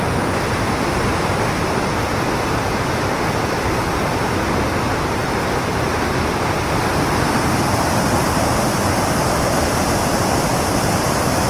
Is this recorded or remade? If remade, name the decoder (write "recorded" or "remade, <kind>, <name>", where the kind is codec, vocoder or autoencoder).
remade, vocoder, BigVGAN v2